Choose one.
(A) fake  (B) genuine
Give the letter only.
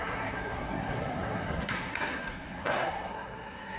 A